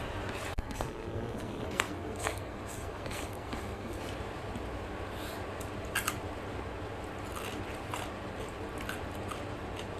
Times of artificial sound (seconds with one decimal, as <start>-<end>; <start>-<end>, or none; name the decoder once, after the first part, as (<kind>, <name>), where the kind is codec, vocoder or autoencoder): 0.5-4.0 (codec, SNAC)